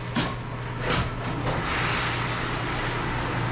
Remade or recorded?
recorded